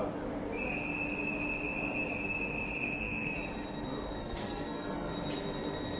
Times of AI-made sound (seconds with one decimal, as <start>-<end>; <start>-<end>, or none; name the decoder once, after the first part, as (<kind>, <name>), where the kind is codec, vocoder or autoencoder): 2.8-3.4 (codec, SNAC); 4.2-5.1